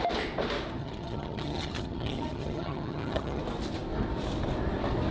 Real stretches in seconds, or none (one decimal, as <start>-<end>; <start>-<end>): 0.0-0.8; 3.4-5.1